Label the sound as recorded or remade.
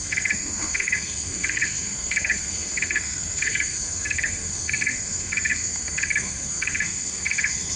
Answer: remade